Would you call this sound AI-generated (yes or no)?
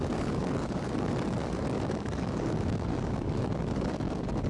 yes